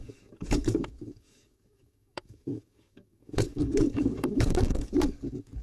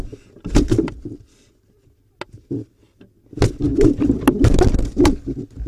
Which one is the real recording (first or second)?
second